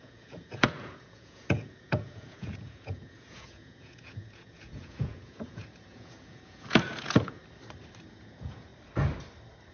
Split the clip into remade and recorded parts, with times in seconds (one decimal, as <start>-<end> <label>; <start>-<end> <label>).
0.0-7.4 remade; 7.4-8.0 recorded; 8.0-8.7 remade; 8.7-9.7 recorded